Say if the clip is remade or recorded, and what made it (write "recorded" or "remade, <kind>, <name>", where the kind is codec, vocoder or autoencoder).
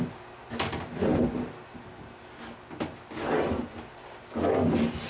recorded